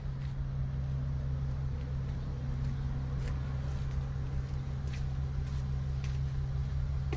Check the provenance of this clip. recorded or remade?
recorded